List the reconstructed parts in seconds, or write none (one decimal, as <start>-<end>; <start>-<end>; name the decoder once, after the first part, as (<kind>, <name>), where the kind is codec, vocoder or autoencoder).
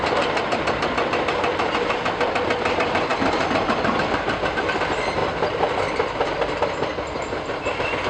0.0-3.1 (vocoder, BigVGAN v2); 4.7-5.2; 5.8-8.1